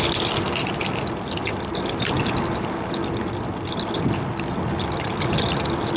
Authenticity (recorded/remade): recorded